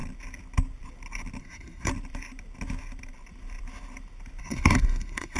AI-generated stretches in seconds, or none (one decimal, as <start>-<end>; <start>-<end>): 1.4-1.9; 4.4-5.4